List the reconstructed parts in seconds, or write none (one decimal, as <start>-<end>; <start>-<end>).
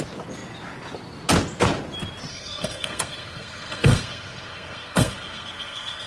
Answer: 2.3-6.1